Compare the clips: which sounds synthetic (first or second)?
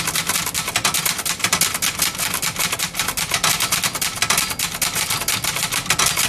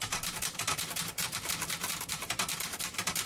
second